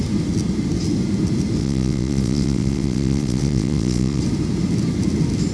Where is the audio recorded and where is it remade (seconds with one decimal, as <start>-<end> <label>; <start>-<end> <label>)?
0.0-1.6 recorded; 1.6-4.2 remade; 4.2-5.5 recorded